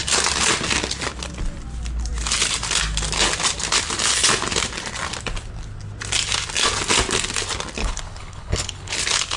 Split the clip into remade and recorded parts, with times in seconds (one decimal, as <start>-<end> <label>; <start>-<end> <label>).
0.0-7.8 recorded; 7.8-9.0 remade; 9.0-9.4 recorded